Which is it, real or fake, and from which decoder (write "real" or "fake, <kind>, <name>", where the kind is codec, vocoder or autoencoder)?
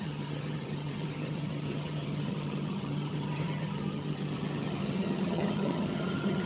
fake, vocoder, HiFi-GAN